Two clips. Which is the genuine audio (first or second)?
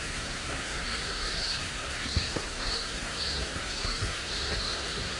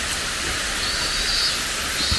second